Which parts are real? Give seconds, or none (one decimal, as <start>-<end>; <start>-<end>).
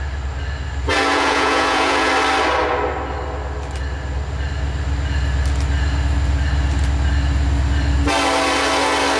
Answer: 0.0-0.9; 2.1-9.2